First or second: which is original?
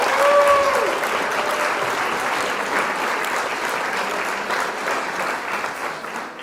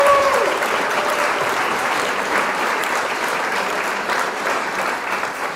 first